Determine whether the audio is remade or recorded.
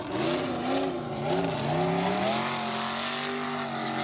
recorded